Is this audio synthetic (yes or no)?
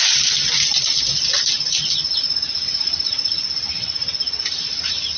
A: no